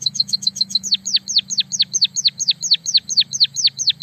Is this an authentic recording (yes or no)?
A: no